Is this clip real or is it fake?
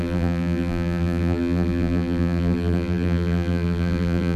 fake